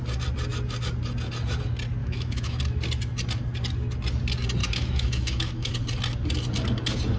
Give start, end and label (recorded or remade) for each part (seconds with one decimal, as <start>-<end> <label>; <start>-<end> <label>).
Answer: 0.0-2.0 recorded; 2.0-2.6 remade; 2.6-4.6 recorded; 4.6-5.7 remade; 5.7-7.2 recorded